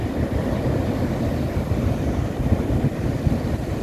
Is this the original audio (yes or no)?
yes